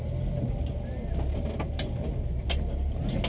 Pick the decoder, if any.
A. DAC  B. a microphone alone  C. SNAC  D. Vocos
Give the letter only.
B